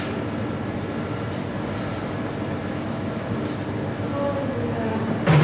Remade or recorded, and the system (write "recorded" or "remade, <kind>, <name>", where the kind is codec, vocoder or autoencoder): recorded